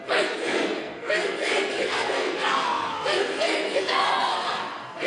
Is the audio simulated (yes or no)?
yes